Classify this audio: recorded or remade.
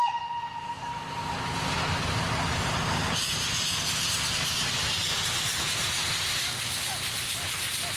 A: recorded